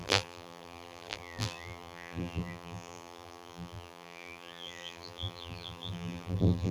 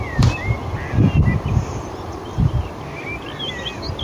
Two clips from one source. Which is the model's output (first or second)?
first